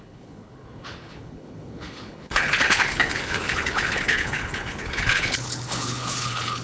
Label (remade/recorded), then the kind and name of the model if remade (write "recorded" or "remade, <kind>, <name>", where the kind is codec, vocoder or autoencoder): remade, codec, HILCodec